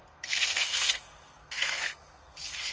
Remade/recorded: remade